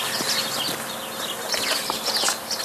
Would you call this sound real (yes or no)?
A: yes